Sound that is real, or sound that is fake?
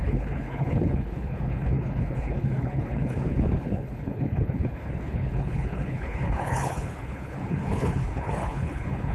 fake